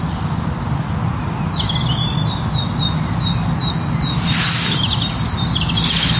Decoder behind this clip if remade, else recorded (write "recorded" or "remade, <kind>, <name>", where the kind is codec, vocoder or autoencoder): recorded